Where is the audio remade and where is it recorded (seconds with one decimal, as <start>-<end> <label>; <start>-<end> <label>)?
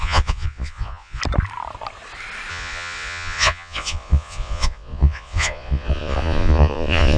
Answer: 0.0-1.2 remade; 1.2-2.5 recorded; 2.5-7.2 remade